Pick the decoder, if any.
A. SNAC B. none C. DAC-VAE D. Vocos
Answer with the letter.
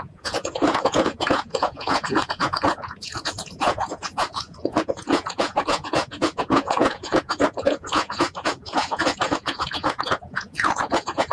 D